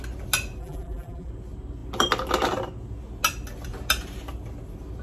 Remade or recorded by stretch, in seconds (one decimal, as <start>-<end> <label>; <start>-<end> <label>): 0.0-0.6 recorded; 0.6-1.3 remade; 1.3-5.0 recorded